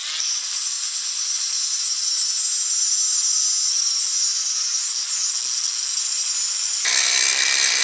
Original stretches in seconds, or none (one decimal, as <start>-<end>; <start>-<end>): 0.0-7.8